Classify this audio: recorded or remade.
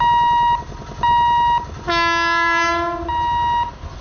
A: recorded